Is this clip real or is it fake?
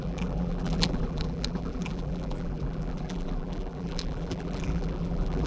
fake